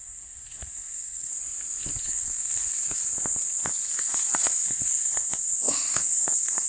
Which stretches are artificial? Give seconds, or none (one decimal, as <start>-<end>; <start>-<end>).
0.0-1.3; 2.0-3.0; 4.0-6.7